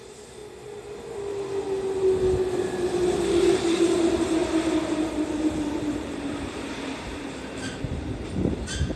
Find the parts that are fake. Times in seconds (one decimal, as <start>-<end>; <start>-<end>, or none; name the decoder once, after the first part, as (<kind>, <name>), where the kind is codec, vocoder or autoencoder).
0.0-0.4 (vocoder, BigVGAN v2); 3.3-9.0